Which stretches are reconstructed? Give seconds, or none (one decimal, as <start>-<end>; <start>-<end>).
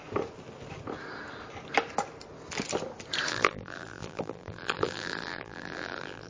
3.3-6.3